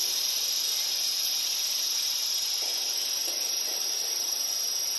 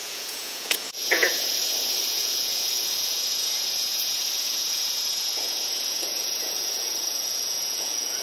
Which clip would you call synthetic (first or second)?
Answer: second